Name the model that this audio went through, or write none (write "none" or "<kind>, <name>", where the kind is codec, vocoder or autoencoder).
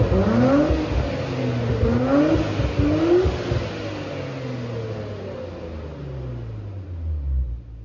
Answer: none